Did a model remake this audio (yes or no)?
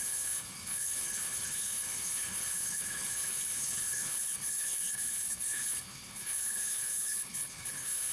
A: yes